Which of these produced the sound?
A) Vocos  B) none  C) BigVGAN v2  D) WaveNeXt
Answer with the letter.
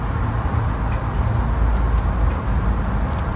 B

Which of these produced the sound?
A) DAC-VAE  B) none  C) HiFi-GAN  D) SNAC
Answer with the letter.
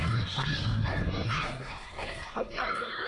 D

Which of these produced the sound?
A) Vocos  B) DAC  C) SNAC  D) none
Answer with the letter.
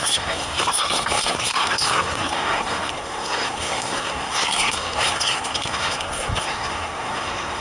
C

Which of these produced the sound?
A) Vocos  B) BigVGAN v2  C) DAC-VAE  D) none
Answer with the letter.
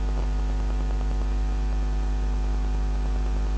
D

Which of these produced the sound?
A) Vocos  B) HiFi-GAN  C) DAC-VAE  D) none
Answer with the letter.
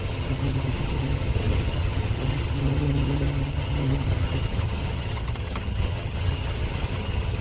B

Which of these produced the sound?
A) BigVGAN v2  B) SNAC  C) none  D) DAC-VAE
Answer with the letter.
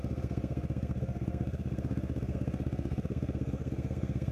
B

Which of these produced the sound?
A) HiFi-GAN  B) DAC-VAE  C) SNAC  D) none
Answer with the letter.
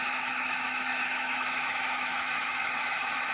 B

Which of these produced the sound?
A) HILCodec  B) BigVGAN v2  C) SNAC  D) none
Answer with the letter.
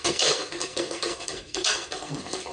C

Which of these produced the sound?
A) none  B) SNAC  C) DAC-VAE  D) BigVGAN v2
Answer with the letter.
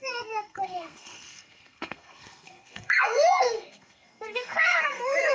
B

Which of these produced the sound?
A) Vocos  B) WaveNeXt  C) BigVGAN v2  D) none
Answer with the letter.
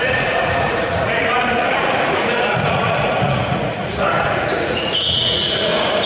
A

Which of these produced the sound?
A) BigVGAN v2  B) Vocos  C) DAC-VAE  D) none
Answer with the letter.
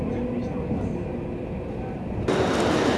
D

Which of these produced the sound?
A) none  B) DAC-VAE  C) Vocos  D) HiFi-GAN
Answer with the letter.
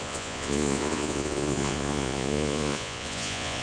C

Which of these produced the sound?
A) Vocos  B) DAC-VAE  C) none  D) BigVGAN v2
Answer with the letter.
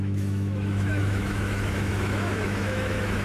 B